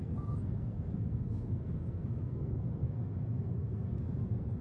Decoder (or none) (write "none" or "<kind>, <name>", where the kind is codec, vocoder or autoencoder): codec, SNAC